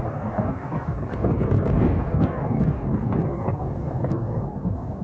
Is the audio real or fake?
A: fake